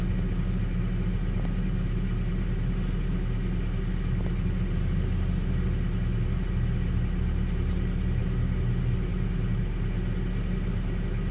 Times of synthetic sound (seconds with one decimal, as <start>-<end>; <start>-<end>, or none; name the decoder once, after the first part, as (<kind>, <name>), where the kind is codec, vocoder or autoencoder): none